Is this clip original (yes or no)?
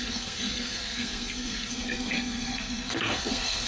no